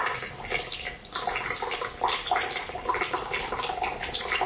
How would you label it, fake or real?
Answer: real